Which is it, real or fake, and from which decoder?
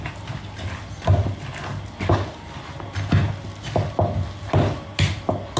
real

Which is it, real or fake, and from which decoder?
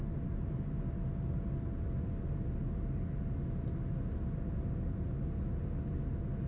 real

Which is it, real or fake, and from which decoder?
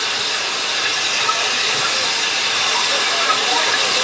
real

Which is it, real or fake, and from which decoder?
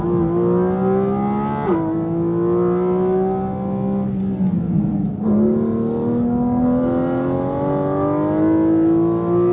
real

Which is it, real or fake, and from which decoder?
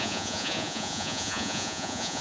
fake, vocoder, Vocos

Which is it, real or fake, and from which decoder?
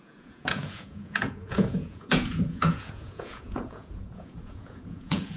fake, vocoder, Vocos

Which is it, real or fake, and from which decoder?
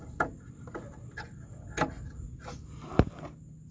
real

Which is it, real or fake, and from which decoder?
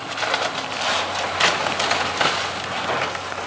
real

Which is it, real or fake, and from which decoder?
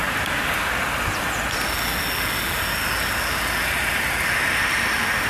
real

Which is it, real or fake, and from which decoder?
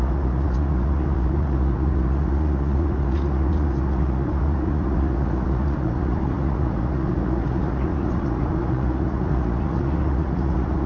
fake, vocoder, Vocos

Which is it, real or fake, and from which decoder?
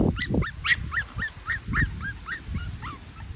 real